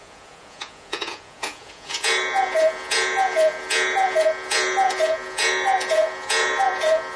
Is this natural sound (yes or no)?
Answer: no